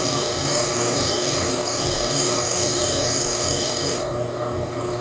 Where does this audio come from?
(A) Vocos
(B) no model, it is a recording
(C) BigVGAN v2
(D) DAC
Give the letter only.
D